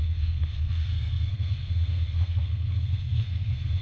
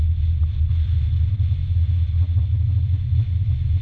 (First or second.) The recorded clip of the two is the second